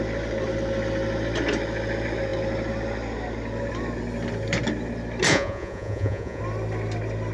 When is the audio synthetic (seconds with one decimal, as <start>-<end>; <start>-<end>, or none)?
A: 5.3-6.4